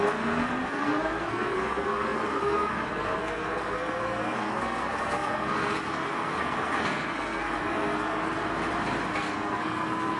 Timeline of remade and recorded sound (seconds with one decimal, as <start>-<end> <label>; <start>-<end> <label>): 0.0-8.4 remade; 8.4-9.1 recorded; 9.1-10.2 remade